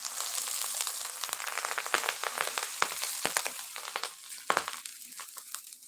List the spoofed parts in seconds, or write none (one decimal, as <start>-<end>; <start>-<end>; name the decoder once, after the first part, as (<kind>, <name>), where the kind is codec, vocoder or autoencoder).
2.2-3.1 (vocoder, BigVGAN v2); 4.9-5.9